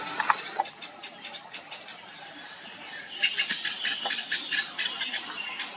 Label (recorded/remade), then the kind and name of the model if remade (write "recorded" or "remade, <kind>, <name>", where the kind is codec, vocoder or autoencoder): remade, vocoder, BigVGAN v2